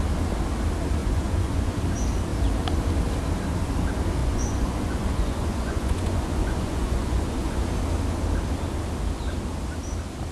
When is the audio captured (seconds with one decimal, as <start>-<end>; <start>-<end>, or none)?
0.0-1.0; 1.8-4.2; 7.6-10.3